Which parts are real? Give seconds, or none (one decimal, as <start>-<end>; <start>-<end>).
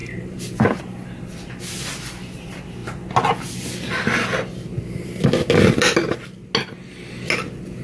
0.8-7.8